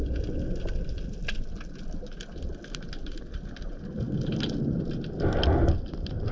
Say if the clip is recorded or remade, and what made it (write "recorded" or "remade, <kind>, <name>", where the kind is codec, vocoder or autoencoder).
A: recorded